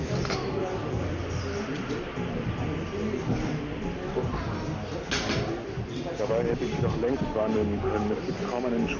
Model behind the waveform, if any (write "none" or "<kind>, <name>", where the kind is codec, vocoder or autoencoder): none